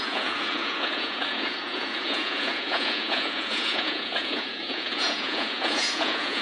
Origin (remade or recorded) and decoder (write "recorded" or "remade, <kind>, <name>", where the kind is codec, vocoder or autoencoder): remade, vocoder, Vocos